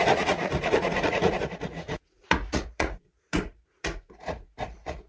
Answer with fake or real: fake